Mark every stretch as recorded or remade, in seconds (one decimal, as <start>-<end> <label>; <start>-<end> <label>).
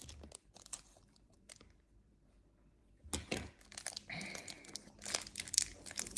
0.0-2.8 remade; 2.8-6.2 recorded